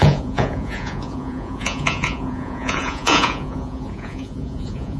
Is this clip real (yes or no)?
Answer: no